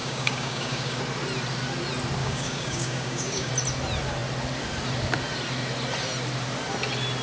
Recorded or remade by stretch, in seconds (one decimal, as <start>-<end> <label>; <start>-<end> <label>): 0.0-1.0 remade; 1.0-2.2 recorded; 2.2-3.5 remade; 3.5-7.2 recorded